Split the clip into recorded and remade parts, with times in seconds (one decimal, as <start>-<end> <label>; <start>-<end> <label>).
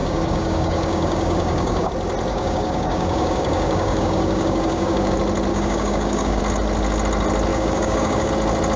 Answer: 0.0-1.9 remade; 1.9-2.3 recorded; 2.3-5.1 remade; 5.1-5.5 recorded; 5.5-6.4 remade; 6.4-7.5 recorded; 7.5-8.3 remade; 8.3-8.8 recorded